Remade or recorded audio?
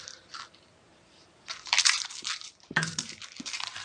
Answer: remade